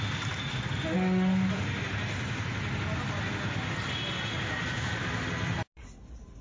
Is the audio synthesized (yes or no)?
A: no